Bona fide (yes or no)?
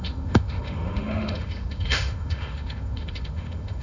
no